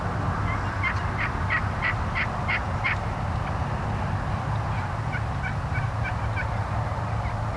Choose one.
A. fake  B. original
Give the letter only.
B